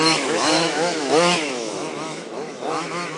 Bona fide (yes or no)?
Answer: no